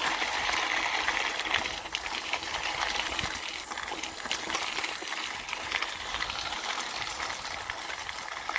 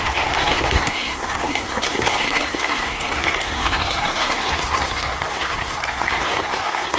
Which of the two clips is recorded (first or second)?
first